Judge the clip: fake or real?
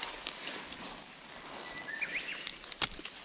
real